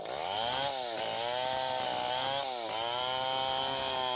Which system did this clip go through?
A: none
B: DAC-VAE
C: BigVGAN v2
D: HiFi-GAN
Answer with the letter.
A